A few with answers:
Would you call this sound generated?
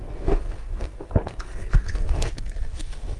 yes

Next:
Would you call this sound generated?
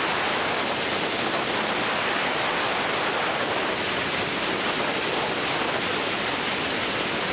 no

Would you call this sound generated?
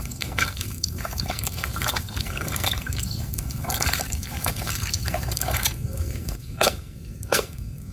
yes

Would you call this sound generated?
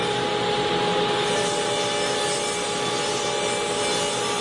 no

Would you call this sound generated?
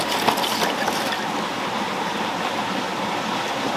no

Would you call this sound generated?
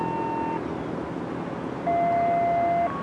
no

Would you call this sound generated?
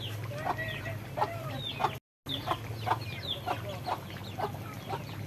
no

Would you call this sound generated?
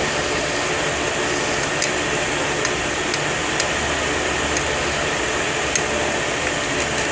no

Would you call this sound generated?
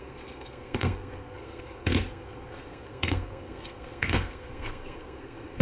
yes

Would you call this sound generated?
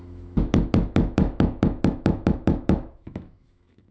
yes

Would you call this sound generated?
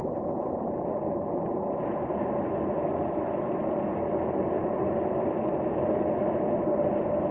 no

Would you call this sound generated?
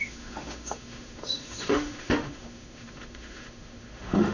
yes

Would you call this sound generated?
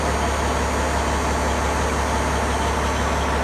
no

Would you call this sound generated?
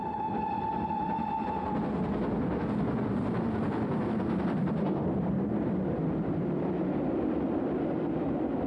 no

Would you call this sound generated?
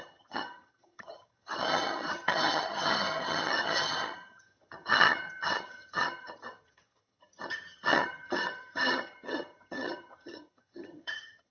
yes